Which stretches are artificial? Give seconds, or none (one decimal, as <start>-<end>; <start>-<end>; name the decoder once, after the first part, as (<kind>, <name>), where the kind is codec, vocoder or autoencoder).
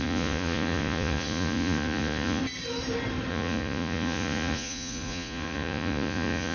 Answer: 0.0-2.4 (vocoder, Vocos); 3.3-6.5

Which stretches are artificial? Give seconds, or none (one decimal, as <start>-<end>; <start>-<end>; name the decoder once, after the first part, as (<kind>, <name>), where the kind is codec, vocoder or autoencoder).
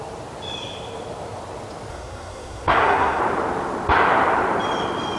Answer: 1.9-3.2 (codec, SNAC)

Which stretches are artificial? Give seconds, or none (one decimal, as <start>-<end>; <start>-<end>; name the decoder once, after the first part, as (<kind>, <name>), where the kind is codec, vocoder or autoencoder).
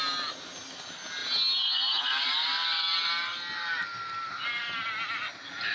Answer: none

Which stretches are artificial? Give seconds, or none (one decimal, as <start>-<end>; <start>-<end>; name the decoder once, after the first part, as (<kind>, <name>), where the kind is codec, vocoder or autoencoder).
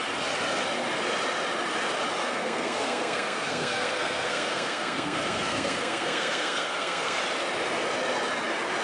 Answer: 2.2-7.2 (codec, SNAC)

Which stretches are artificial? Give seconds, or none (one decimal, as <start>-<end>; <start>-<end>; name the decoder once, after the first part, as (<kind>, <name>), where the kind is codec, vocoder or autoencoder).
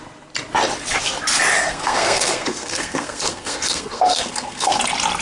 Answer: 1.7-4.8 (codec, SNAC)